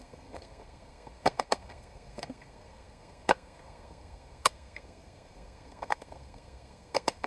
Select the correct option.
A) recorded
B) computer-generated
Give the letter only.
B